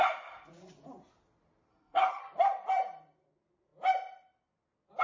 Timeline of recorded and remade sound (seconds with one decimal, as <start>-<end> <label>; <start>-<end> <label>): 0.0-1.7 recorded; 1.7-2.2 remade; 2.2-5.0 recorded